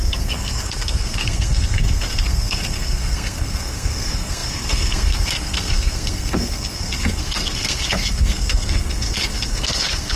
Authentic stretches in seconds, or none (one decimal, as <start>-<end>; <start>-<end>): none